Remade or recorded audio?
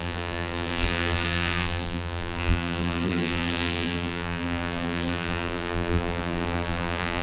remade